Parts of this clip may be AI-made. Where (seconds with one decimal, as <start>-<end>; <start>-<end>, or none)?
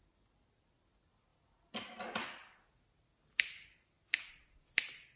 none